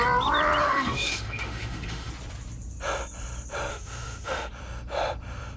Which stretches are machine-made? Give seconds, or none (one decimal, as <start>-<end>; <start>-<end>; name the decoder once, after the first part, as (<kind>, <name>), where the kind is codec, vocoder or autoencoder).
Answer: 0.6-2.1 (autoencoder, DAC-VAE); 3.7-4.5